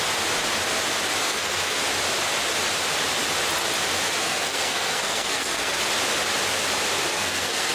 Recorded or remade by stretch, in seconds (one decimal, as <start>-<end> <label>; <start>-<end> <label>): 0.0-1.2 recorded; 1.2-1.8 remade; 1.8-4.2 recorded; 4.2-5.8 remade; 5.8-7.1 recorded; 7.1-7.7 remade